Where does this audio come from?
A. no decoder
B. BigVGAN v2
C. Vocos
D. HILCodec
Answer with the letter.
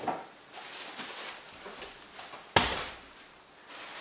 A